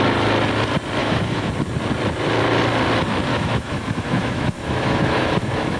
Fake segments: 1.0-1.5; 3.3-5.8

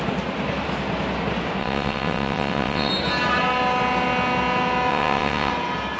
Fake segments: 1.6-2.9; 4.9-5.5

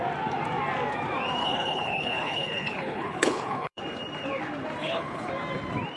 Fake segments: 1.4-3.8; 4.8-5.3